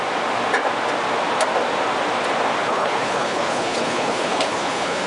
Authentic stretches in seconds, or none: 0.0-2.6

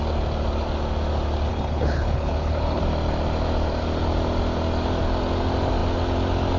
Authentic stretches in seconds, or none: 0.0-1.5; 2.8-6.6